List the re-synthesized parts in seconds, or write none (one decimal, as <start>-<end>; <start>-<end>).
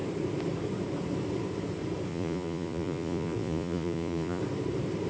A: 2.1-4.4